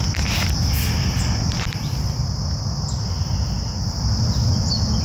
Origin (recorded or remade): recorded